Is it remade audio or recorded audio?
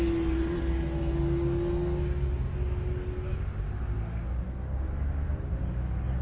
recorded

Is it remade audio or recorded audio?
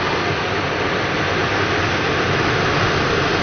recorded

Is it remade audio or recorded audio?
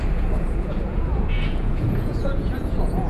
remade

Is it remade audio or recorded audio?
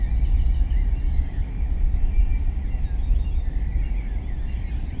recorded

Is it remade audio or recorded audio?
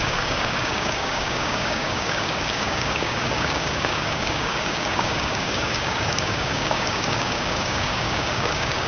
remade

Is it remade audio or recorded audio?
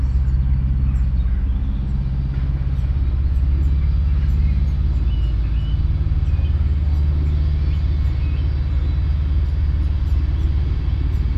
recorded